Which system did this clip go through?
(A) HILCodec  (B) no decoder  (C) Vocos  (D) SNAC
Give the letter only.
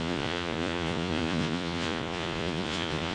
C